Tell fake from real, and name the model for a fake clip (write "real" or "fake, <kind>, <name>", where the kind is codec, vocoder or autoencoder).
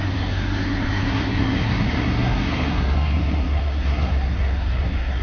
fake, codec, SNAC